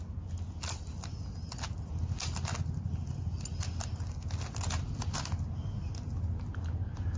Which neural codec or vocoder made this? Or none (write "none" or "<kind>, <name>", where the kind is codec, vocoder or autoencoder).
none